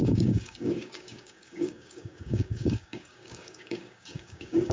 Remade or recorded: remade